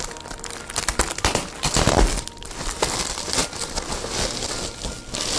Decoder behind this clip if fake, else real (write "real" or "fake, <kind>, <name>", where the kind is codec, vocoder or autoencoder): fake, vocoder, BigVGAN v2